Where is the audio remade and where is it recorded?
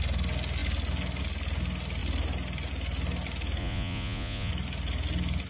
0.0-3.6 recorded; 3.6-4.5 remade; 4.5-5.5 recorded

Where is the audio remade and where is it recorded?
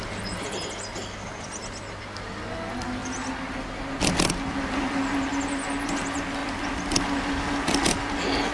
0.0-8.5 recorded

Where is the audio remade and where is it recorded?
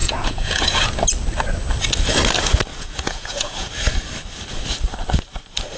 0.0-1.0 remade; 1.0-2.7 recorded; 2.7-3.7 remade; 3.7-5.8 recorded